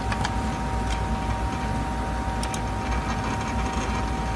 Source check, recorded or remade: recorded